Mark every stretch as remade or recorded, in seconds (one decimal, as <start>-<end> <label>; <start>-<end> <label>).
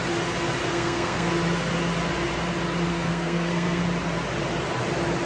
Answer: 0.0-0.7 recorded; 0.7-1.3 remade; 1.3-2.9 recorded; 2.9-3.8 remade; 3.8-5.3 recorded